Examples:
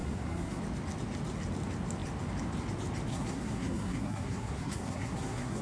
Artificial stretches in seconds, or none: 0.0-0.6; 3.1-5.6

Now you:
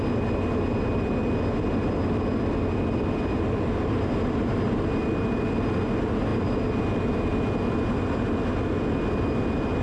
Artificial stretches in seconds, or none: none

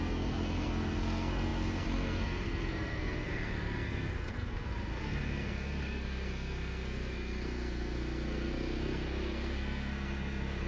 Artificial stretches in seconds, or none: 0.0-10.7

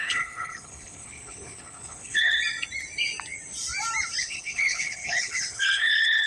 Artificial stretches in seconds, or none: 0.0-2.4; 4.2-6.3

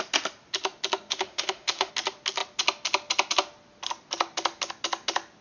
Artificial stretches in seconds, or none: 1.1-1.9